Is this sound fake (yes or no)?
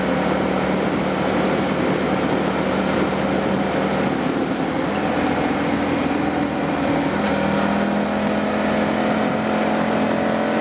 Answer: no